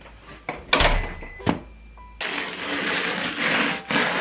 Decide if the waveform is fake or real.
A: real